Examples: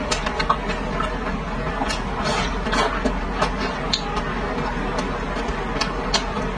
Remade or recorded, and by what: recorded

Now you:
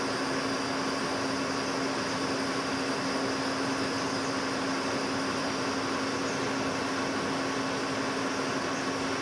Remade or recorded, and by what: recorded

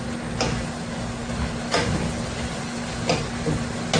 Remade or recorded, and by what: recorded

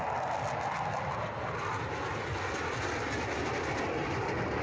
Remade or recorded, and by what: recorded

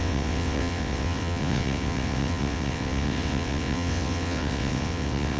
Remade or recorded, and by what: remade, vocoder, WaveNeXt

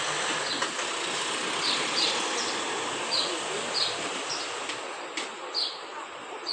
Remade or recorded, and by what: recorded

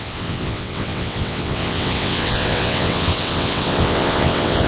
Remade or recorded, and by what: remade, vocoder, WaveNeXt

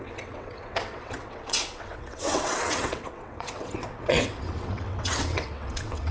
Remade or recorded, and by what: remade, vocoder, WaveNeXt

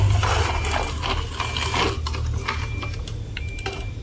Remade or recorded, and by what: recorded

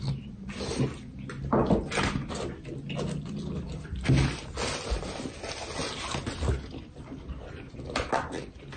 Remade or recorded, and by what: recorded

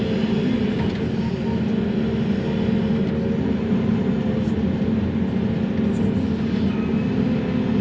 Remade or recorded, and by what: recorded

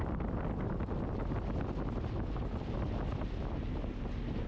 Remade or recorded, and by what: recorded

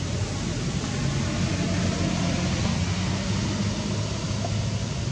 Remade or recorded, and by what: recorded